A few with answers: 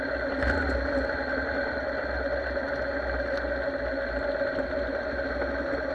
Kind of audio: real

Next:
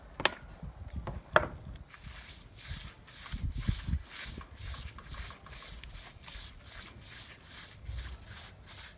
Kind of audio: real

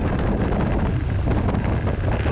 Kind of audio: real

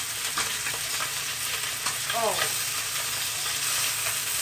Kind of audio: real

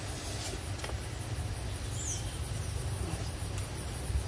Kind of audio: real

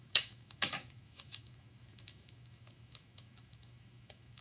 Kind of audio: fake